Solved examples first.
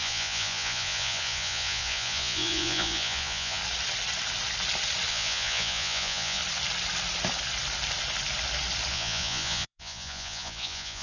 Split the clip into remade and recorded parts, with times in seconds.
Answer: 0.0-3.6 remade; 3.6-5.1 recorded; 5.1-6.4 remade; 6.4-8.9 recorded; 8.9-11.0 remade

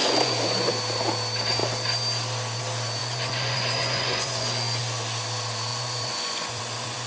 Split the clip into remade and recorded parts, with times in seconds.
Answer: 0.0-0.7 remade; 0.7-3.0 recorded; 3.0-4.8 remade; 4.8-5.7 recorded; 5.7-7.1 remade

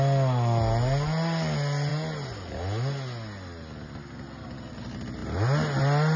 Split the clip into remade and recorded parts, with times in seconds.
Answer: 0.0-6.2 recorded

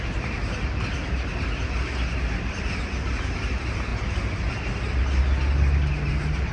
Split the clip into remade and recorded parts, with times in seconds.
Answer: 0.0-6.5 recorded

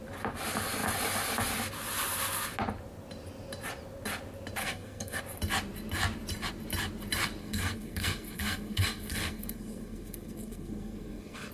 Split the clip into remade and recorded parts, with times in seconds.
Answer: 0.0-4.6 recorded; 4.6-5.2 remade; 5.2-7.4 recorded; 7.4-11.5 remade

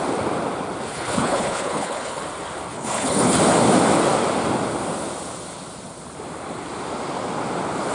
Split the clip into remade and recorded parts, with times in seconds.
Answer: 0.0-0.9 recorded; 0.9-2.2 remade; 2.2-2.7 recorded; 2.7-3.4 remade; 3.4-7.9 recorded

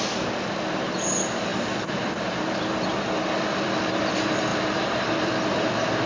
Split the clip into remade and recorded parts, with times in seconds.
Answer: 0.0-1.5 recorded; 1.5-4.1 remade; 4.1-4.5 recorded; 4.5-6.1 remade